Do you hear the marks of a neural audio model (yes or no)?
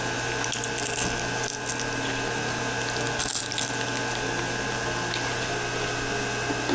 no